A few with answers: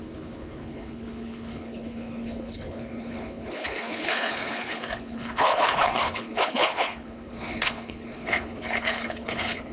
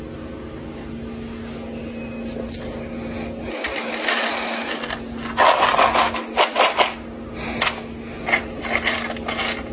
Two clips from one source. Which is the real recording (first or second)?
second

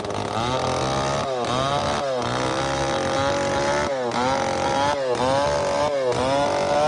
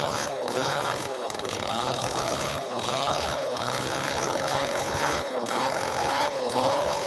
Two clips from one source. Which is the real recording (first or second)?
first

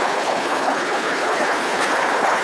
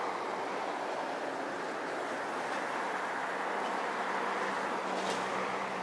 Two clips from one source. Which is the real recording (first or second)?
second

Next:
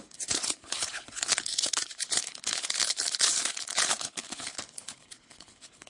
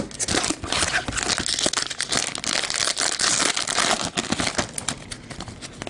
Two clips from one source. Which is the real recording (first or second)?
second